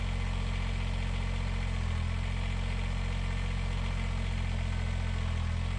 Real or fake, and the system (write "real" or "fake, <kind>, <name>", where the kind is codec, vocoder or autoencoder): real